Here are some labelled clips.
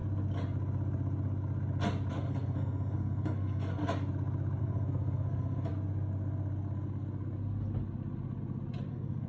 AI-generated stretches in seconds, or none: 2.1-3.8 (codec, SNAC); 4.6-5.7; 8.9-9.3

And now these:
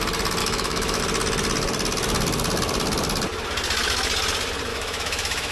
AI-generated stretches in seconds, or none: 0.4-1.0 (autoencoder, DAC-VAE); 4.7-5.5

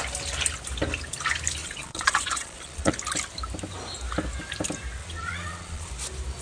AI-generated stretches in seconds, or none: 1.6-2.9 (vocoder, Vocos); 5.0-5.9